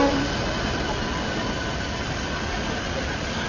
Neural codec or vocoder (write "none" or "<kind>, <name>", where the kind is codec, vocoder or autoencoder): none